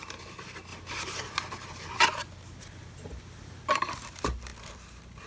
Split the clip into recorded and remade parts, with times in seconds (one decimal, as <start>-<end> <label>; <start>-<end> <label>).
0.0-5.3 recorded